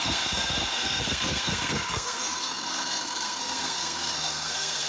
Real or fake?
fake